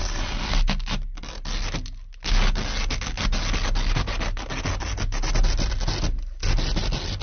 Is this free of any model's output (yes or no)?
yes